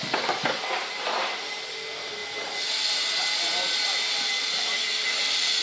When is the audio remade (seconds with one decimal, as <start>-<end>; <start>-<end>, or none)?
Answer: none